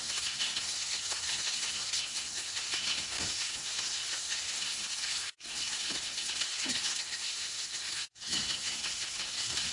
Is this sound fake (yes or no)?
yes